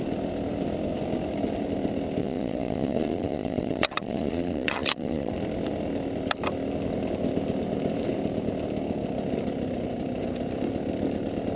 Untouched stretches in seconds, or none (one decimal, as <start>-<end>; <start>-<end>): 0.0-2.2; 5.3-11.6

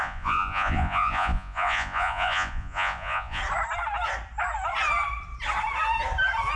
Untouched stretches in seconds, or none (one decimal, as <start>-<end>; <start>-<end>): 3.4-6.6

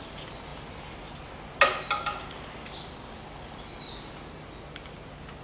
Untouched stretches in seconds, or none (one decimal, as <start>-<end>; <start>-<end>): 0.0-5.4

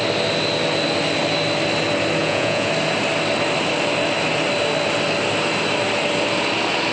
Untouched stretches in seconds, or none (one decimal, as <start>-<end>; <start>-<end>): 0.0-2.2; 2.7-6.9

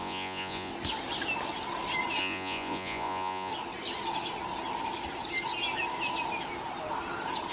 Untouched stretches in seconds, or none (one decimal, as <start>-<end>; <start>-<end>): 0.7-2.2; 3.5-7.5

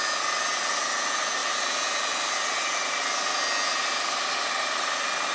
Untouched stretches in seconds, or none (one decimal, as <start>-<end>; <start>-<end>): 0.0-5.3

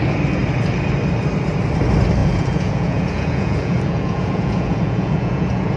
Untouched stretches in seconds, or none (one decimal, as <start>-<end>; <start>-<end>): 0.0-2.2

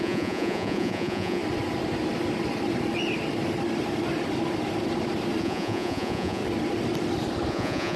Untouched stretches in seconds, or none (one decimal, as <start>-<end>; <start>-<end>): 1.4-5.4; 6.4-7.5